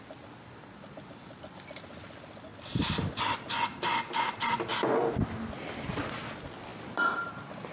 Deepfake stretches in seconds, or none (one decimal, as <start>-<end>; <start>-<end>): none